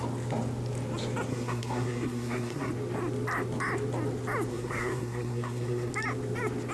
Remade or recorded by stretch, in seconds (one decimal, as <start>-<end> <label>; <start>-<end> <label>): 0.0-1.3 recorded; 1.3-2.7 remade; 2.7-4.5 recorded; 4.5-5.9 remade; 5.9-6.7 recorded